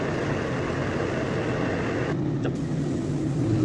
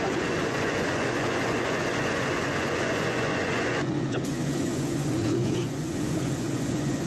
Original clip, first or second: first